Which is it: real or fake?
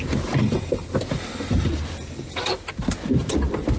real